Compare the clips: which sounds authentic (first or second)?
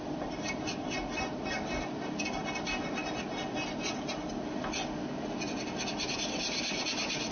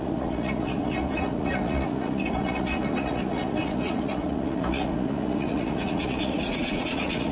first